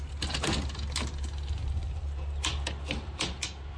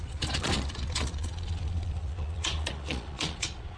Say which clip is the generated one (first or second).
second